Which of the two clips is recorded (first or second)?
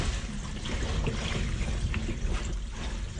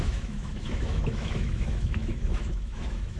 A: first